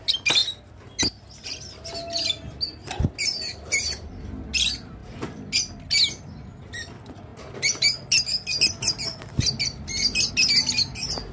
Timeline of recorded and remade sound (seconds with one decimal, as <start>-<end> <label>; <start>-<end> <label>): 0.0-11.3 recorded